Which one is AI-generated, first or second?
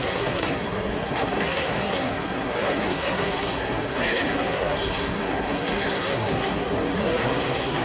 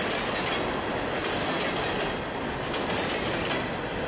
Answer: first